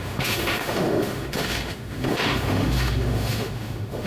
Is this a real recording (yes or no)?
no